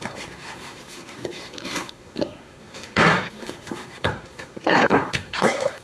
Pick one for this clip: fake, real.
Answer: fake